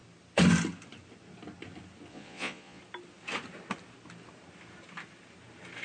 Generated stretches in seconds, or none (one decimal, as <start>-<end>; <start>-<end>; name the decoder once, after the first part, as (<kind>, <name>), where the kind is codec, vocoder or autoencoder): 2.1-2.8 (vocoder, Vocos)